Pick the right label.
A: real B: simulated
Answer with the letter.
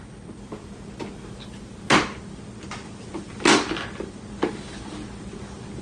A